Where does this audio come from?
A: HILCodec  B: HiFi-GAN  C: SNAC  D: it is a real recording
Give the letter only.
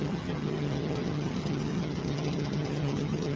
B